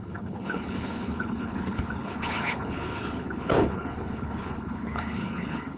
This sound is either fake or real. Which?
fake